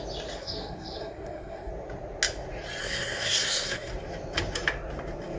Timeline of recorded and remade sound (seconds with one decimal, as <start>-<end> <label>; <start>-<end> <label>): 0.0-0.4 recorded; 0.4-1.7 remade; 1.7-2.8 recorded; 2.8-3.9 remade; 3.9-5.4 recorded